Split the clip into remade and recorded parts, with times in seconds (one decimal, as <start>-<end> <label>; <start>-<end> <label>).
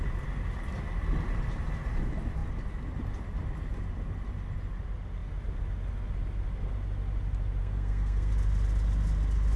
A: 0.0-7.6 recorded; 7.6-8.3 remade; 8.3-9.6 recorded